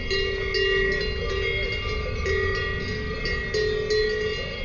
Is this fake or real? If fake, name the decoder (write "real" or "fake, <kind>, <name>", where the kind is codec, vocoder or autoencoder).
real